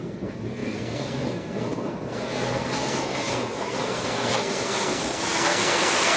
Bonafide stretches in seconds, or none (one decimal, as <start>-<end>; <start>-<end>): none

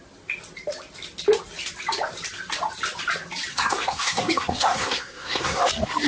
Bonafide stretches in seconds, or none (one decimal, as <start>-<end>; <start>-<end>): 0.0-3.5; 5.6-6.1